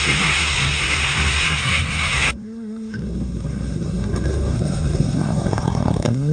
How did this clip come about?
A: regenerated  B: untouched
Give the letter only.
A